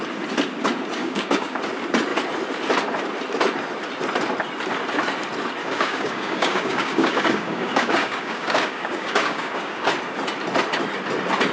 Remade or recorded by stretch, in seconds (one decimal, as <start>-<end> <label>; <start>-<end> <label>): 0.0-1.0 recorded; 1.0-1.6 remade; 1.6-5.6 recorded; 5.6-9.9 remade; 9.9-11.5 recorded